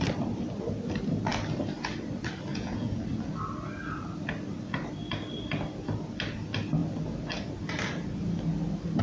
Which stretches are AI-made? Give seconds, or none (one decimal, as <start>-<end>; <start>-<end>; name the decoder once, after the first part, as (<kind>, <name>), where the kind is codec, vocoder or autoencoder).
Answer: 2.5-3.0 (vocoder, Vocos)